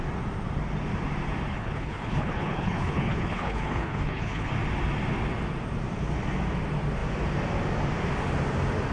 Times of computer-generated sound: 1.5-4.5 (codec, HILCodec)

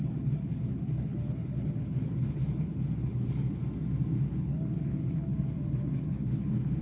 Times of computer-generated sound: 0.0-3.6 (codec, HILCodec); 4.3-6.8

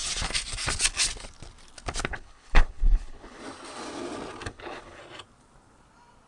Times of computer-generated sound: 2.1-3.4 (codec, HILCodec); 4.4-5.0

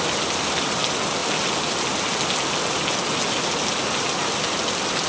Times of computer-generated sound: none

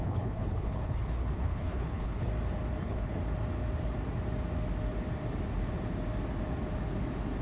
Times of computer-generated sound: 0.0-2.3 (codec, HILCodec); 2.8-3.2

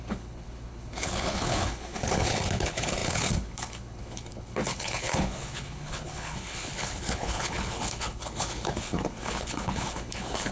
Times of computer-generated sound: 0.0-10.5 (codec, HILCodec)

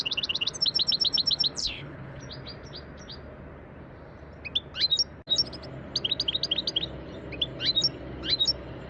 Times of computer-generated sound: 1.6-2.2 (codec, HILCodec)